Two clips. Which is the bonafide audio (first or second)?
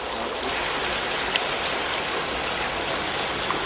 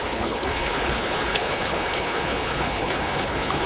first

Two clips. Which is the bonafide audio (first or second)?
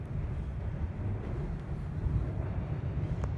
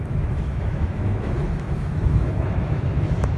first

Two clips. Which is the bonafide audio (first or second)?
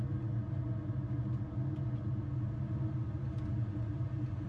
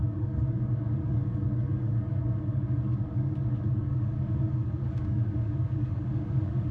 first